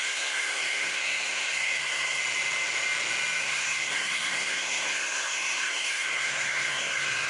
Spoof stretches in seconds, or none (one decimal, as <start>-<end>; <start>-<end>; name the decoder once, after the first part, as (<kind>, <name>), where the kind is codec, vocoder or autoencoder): 0.0-2.2 (codec, SNAC); 3.4-7.3